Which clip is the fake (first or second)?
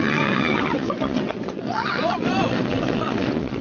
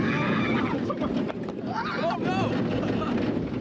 first